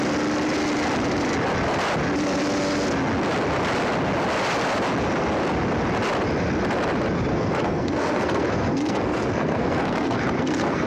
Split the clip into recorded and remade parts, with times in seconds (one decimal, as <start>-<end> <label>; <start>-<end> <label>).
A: 0.0-7.3 recorded; 7.3-10.9 remade